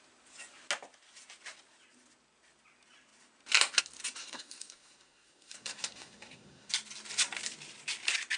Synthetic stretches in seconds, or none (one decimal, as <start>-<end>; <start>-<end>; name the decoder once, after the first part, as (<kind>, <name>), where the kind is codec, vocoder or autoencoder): 4.2-6.7 (codec, SNAC)